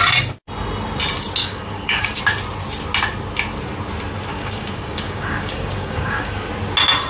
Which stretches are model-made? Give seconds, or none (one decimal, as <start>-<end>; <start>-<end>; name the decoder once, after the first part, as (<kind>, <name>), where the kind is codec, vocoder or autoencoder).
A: 1.4-2.2 (codec, DAC); 4.3-6.5